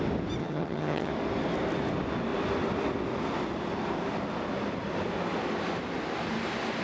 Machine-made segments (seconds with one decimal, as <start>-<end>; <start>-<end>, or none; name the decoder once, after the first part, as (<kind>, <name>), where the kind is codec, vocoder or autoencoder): 0.4-1.1 (vocoder, HiFi-GAN)